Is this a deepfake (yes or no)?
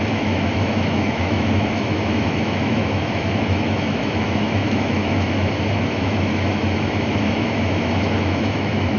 yes